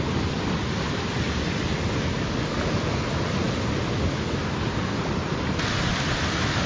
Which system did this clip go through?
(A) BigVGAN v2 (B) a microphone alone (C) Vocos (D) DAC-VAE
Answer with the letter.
B